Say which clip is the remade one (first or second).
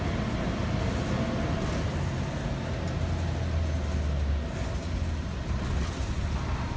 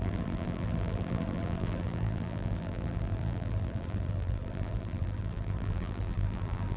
second